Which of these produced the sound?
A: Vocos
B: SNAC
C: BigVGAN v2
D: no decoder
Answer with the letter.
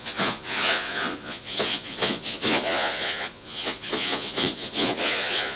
A